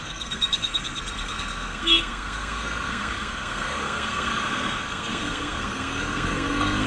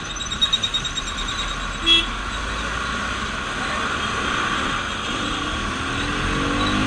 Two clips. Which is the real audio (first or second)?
second